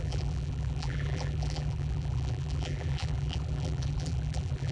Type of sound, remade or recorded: remade